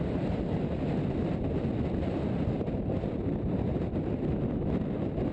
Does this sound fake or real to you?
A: real